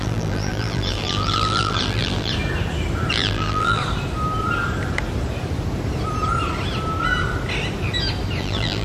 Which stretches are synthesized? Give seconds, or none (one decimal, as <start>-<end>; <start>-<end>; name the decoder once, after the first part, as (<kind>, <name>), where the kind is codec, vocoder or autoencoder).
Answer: 0.0-2.3 (vocoder, BigVGAN v2); 3.1-3.8; 8.4-8.8